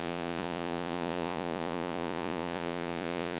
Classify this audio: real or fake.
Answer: fake